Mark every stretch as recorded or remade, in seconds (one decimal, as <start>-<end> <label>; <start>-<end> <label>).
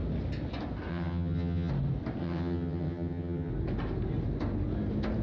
0.0-0.9 recorded; 0.9-1.7 remade; 1.7-2.2 recorded; 2.2-3.5 remade; 3.5-5.2 recorded